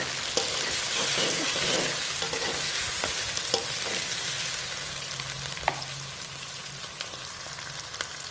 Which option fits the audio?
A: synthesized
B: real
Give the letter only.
B